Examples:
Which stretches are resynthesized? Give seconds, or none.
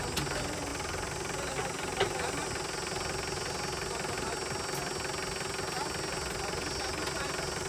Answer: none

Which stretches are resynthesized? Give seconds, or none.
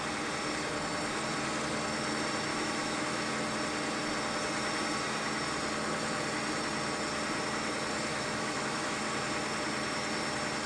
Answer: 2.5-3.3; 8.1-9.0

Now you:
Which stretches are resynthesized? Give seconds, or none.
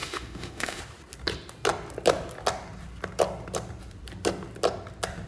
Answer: 0.0-0.8